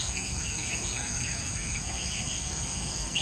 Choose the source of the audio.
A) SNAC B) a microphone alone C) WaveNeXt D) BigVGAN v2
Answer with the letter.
A